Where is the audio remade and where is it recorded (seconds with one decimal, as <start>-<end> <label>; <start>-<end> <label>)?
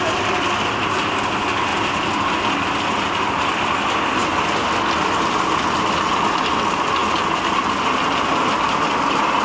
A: 0.0-9.4 recorded